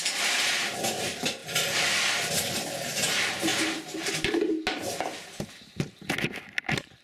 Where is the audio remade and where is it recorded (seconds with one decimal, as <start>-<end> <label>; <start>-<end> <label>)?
0.0-7.0 recorded